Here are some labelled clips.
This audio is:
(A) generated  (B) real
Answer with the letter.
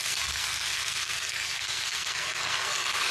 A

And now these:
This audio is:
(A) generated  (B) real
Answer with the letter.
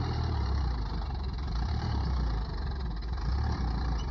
A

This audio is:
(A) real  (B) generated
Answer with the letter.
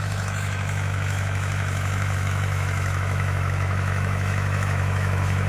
B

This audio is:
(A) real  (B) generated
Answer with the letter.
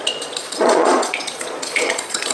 B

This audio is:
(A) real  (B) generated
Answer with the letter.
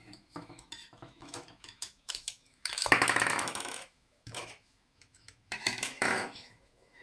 B